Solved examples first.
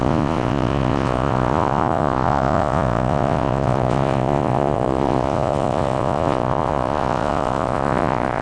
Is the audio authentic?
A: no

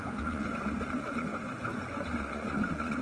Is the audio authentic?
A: no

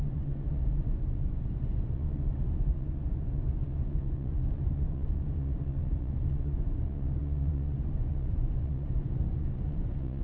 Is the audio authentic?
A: no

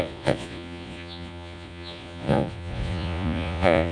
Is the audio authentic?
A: no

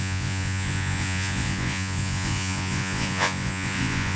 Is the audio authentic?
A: no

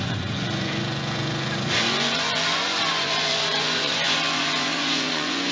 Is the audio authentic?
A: no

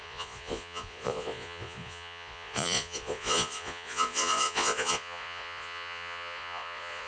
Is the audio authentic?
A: no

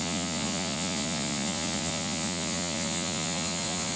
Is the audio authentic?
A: no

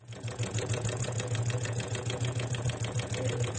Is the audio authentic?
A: no